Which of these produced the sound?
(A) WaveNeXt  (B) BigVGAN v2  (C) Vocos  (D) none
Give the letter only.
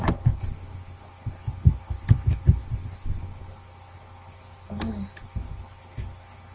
D